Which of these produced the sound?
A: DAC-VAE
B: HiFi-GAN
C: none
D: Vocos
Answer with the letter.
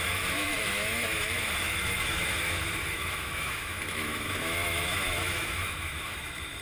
A